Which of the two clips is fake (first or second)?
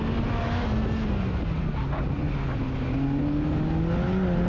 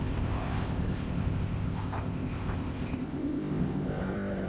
second